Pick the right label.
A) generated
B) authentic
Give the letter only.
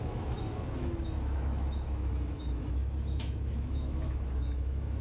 A